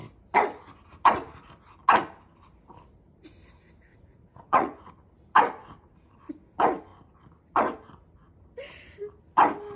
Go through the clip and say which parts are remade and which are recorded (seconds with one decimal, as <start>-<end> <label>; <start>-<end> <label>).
0.0-3.9 recorded; 3.9-4.9 remade; 4.9-9.8 recorded